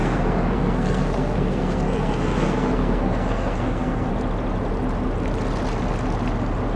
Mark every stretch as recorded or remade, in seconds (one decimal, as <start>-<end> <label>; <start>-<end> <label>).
0.0-4.1 remade; 4.1-6.8 recorded

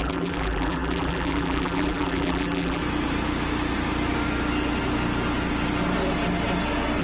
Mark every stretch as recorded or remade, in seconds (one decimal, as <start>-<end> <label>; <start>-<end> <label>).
0.0-2.8 remade; 2.8-7.0 recorded

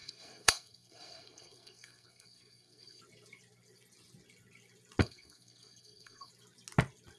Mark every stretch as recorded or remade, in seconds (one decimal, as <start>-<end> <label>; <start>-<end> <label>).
0.0-3.0 remade; 3.0-5.0 recorded; 5.0-6.3 remade; 6.3-7.2 recorded

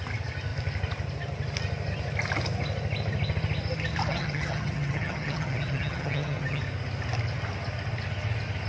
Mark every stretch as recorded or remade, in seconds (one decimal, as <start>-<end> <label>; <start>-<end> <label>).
0.0-4.1 recorded; 4.1-6.6 remade; 6.6-8.7 recorded

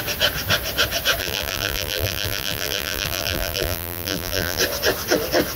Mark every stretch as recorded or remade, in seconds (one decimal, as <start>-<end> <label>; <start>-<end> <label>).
0.0-1.2 recorded; 1.2-4.6 remade; 4.6-5.6 recorded